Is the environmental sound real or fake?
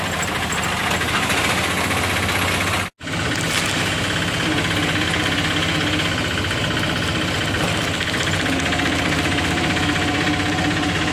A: real